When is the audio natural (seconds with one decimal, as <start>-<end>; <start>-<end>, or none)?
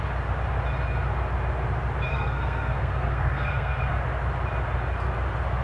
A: 0.0-2.1; 3.9-5.6